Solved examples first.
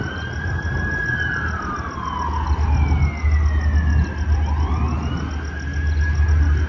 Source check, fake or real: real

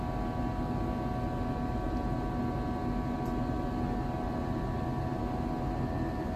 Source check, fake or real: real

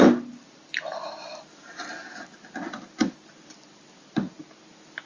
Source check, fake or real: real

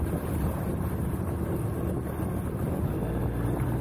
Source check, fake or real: real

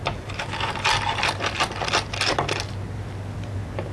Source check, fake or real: real